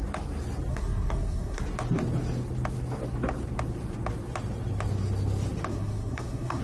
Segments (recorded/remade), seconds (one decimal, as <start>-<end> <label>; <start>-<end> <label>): 0.0-0.7 recorded; 0.7-1.6 remade; 1.6-5.7 recorded; 5.7-6.6 remade